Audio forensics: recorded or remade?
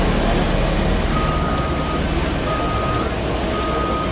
recorded